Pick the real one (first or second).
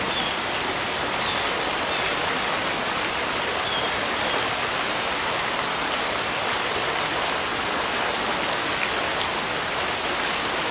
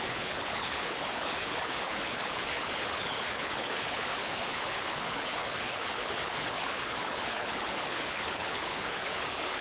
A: first